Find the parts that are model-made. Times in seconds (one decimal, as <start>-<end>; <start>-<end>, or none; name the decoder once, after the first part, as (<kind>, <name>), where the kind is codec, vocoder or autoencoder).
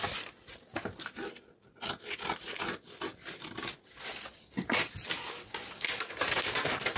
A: none